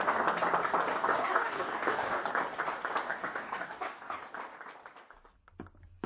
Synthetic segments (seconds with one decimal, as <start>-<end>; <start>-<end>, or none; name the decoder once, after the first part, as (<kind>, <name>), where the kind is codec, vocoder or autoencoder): 0.9-2.3 (codec, DAC); 3.1-4.2